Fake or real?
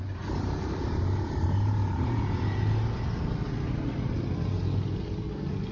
real